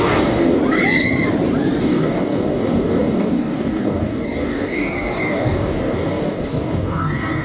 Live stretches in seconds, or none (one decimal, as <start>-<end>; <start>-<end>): 0.6-1.8